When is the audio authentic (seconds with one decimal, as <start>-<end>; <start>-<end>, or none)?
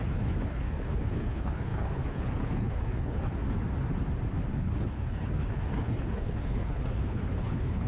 3.4-4.6